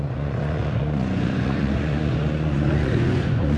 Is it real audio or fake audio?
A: fake